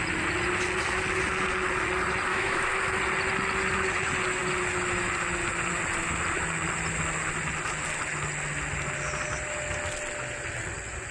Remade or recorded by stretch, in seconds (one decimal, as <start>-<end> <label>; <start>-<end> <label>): 0.0-2.3 recorded; 2.3-3.0 remade; 3.0-11.1 recorded